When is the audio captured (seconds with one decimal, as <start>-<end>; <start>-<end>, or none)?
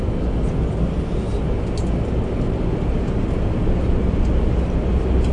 0.0-5.3